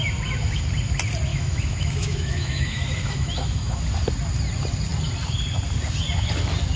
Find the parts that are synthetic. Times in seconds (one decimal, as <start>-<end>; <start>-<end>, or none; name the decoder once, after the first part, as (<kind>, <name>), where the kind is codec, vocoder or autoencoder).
1.3-3.8 (autoencoder, DAC-VAE)